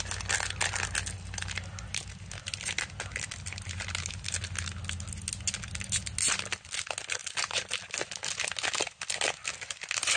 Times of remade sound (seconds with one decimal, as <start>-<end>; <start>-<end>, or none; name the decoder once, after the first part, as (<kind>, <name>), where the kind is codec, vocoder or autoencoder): none